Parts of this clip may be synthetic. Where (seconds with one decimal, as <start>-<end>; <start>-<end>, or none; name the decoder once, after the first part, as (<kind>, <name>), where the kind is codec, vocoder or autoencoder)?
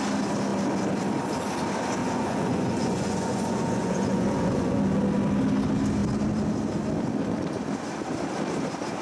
2.0-4.8 (vocoder, Vocos)